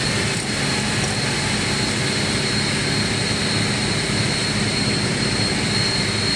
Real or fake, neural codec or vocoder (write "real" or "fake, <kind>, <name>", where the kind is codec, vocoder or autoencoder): real